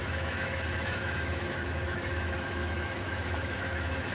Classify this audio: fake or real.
fake